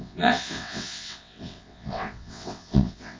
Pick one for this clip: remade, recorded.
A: remade